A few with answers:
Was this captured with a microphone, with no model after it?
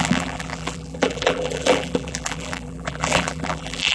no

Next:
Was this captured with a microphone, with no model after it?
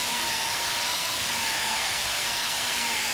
no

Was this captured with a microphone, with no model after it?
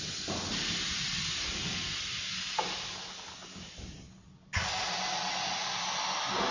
yes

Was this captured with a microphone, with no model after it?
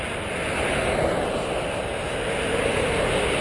yes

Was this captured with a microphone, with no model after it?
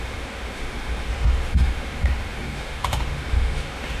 no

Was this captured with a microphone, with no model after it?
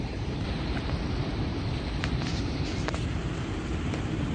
no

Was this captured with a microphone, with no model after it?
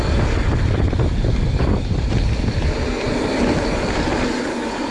yes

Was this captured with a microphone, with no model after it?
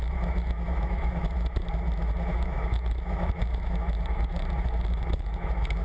no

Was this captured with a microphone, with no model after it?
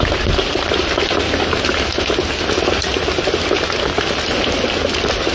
yes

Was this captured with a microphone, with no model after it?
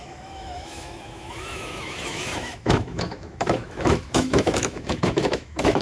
no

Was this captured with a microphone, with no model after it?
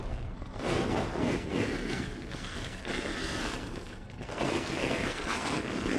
no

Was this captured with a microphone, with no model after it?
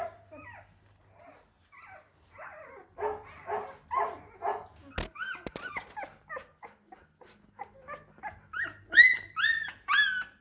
yes